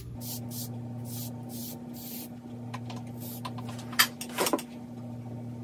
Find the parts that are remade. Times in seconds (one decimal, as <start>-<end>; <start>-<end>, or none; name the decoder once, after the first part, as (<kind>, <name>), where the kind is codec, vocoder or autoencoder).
none